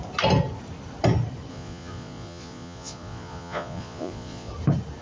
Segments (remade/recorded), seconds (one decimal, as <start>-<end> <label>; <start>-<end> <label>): 0.0-1.5 recorded; 1.5-4.5 remade; 4.5-5.0 recorded